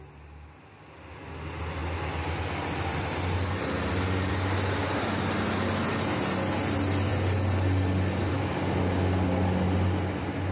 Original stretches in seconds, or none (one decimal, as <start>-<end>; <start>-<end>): 0.0-10.5